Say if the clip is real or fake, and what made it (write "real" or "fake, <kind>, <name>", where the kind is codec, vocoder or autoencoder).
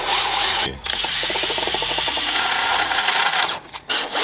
fake, vocoder, Vocos